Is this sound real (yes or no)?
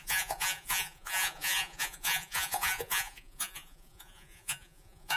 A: no